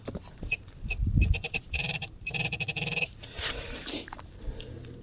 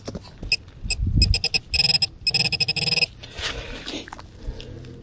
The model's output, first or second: first